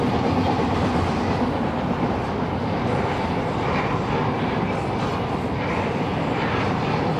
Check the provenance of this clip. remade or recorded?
recorded